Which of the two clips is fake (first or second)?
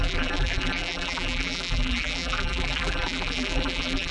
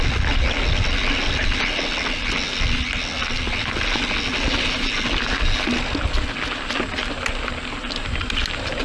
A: first